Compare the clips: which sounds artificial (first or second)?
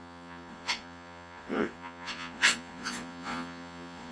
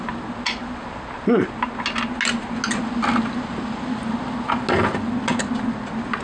first